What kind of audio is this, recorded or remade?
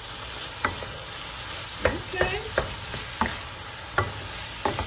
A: recorded